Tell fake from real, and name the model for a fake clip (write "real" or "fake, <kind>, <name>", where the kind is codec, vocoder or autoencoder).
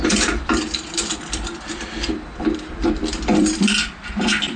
fake, vocoder, BigVGAN v2